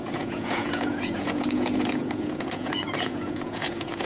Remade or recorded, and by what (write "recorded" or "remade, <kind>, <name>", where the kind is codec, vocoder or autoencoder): remade, vocoder, Vocos